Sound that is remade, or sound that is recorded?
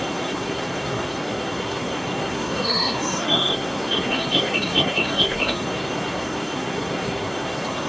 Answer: remade